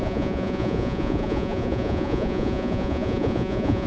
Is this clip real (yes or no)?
no